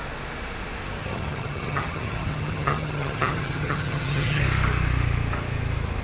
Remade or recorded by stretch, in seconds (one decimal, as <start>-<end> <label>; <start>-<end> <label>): 0.0-1.0 recorded; 1.0-4.4 remade; 4.4-6.0 recorded

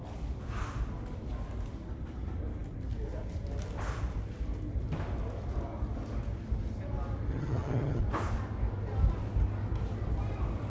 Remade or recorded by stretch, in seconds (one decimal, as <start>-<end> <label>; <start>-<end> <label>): 0.0-7.3 recorded; 7.3-8.0 remade; 8.0-10.7 recorded